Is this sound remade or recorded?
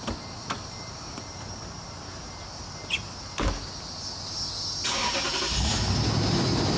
recorded